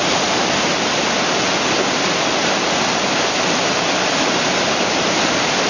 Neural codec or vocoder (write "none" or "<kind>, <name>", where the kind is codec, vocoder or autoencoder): none